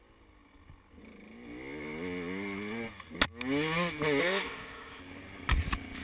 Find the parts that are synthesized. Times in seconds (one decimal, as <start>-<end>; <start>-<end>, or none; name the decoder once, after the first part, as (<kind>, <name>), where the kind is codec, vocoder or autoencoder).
4.2-5.0 (codec, ZipCodec)